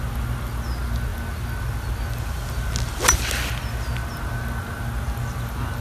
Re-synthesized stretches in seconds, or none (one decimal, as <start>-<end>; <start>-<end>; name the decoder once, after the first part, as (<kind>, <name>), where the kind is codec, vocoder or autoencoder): none